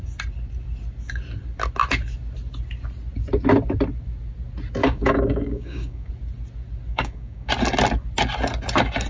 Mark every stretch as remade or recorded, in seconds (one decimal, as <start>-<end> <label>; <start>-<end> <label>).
0.0-4.8 recorded; 4.8-6.1 remade; 6.1-6.9 recorded; 6.9-7.5 remade; 7.5-9.1 recorded